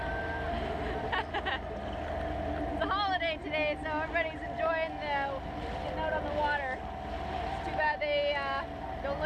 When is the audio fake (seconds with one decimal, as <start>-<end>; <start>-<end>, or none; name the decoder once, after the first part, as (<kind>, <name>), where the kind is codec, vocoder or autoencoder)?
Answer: none